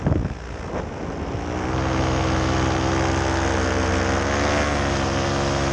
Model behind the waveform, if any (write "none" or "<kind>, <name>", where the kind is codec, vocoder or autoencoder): none